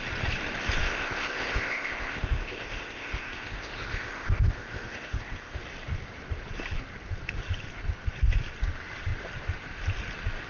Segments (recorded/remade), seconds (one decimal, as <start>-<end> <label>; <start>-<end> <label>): 0.0-0.8 recorded; 0.8-5.6 remade; 5.6-10.5 recorded